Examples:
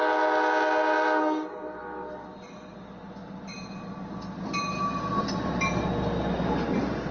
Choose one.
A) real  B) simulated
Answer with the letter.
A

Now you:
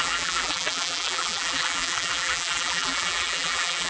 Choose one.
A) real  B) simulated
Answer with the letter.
B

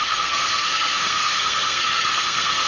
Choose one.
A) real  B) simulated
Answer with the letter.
B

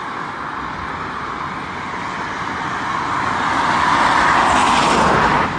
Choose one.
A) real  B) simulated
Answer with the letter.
A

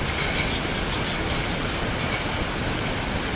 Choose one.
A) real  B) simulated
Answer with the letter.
A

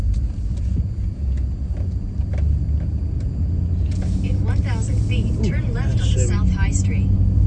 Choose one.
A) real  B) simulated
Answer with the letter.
A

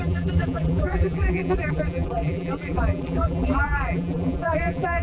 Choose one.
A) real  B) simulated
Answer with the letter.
B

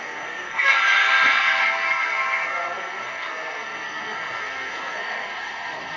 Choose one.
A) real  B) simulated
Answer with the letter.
B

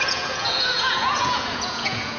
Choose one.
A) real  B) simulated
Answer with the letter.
B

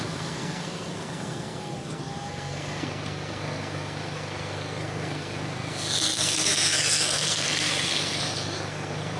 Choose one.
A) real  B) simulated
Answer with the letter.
B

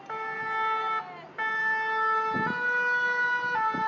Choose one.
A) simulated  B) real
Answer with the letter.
B